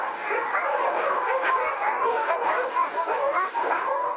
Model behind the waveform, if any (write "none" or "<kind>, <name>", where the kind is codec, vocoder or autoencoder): codec, DAC